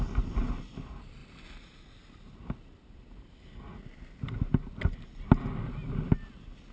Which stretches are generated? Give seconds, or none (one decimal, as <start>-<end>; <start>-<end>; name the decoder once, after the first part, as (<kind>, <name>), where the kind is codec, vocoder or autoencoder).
none